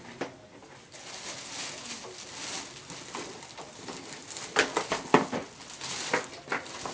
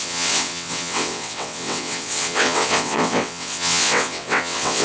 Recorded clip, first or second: first